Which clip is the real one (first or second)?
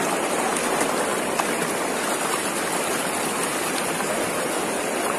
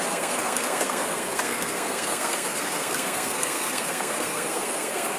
first